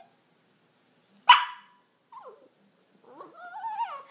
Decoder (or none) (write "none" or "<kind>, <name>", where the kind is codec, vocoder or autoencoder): none